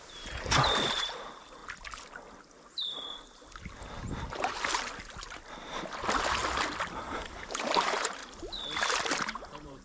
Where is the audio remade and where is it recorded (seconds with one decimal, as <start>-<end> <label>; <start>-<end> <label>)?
0.0-1.6 remade; 1.6-6.9 recorded; 6.9-8.2 remade; 8.2-9.2 recorded; 9.2-9.8 remade